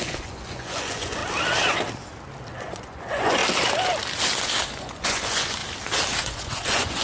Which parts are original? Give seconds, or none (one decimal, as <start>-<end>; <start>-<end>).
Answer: 1.2-2.5; 3.4-4.8; 5.6-6.2